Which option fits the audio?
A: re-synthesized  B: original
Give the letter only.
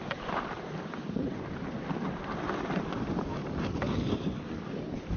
A